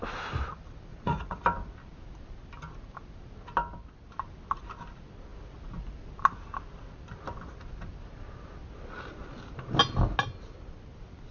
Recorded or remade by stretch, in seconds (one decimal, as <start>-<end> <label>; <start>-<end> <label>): 0.0-0.9 recorded; 0.9-1.4 remade; 1.4-11.3 recorded